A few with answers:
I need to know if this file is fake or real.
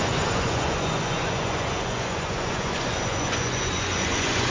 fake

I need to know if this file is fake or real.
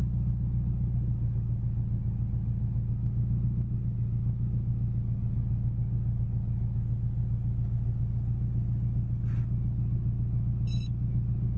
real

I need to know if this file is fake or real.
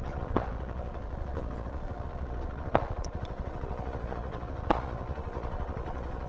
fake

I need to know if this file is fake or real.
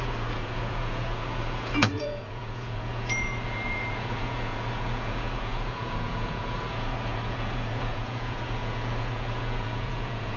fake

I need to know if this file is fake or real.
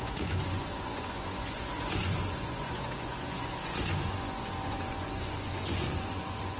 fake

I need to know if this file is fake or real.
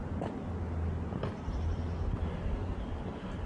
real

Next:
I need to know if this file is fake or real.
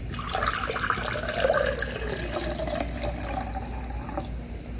real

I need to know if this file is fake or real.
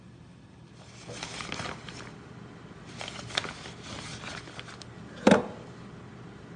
real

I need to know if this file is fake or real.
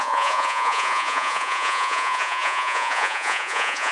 fake